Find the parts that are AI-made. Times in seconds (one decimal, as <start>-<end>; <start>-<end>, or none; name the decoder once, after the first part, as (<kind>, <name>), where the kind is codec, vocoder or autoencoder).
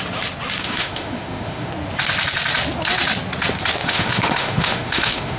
0.6-1.7 (autoencoder, DAC-VAE); 3.8-5.4